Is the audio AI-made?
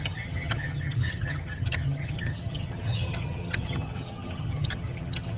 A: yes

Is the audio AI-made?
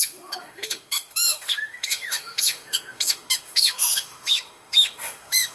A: yes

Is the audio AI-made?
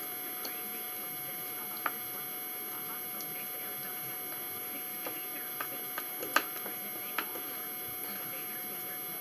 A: no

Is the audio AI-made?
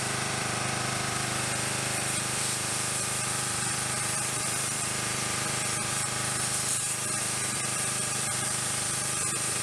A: yes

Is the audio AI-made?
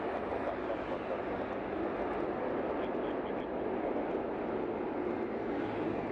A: no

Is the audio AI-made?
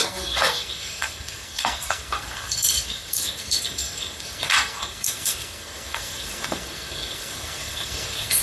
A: yes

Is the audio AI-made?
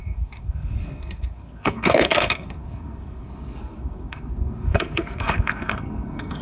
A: yes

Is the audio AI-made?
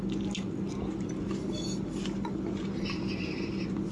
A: no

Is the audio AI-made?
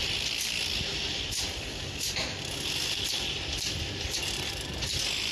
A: no